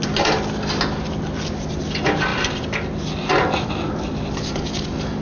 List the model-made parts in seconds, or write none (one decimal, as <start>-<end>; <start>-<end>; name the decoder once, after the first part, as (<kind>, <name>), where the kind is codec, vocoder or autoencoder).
none